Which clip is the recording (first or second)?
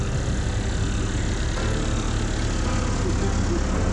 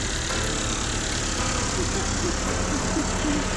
first